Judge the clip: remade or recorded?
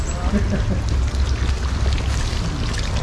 recorded